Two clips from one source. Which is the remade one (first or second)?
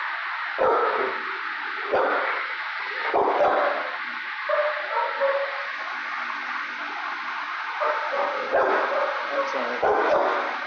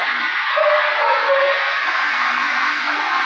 second